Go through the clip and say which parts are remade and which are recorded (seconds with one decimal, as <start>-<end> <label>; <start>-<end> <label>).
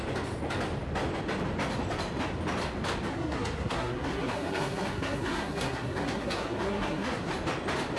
0.0-3.1 recorded; 3.1-7.3 remade; 7.3-8.0 recorded